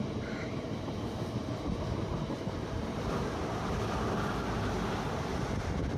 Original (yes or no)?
yes